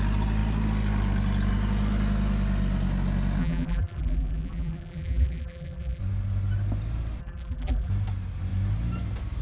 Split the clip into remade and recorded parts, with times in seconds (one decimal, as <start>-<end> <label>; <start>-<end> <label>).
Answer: 0.0-3.4 recorded; 3.4-6.0 remade; 6.0-7.2 recorded; 7.2-7.9 remade; 7.9-9.4 recorded